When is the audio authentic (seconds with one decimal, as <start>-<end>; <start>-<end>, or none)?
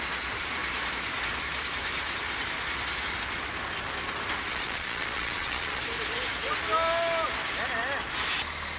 0.0-4.5; 5.8-8.8